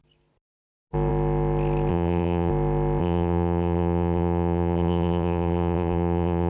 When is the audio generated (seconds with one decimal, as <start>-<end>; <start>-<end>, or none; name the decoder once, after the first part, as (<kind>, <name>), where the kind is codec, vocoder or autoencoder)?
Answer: 1.9-2.5 (vocoder, BigVGAN v2); 3.0-6.5